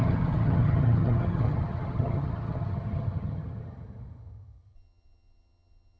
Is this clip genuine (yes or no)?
no